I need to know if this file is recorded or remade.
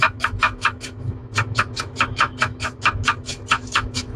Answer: remade